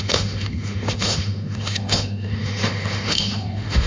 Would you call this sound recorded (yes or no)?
no